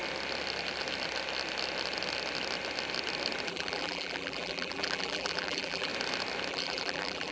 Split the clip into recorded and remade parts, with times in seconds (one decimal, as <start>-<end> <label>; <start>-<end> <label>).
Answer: 0.0-3.5 recorded; 3.5-5.9 remade; 5.9-6.5 recorded; 6.5-7.3 remade